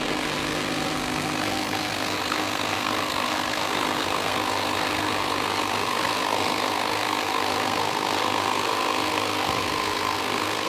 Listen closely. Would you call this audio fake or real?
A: fake